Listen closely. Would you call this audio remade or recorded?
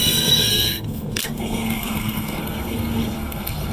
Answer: remade